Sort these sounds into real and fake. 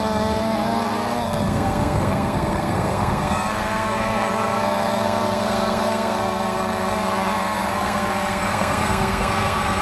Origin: fake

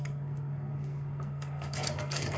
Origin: fake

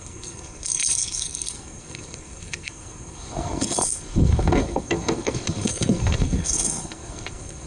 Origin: fake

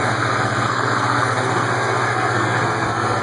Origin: fake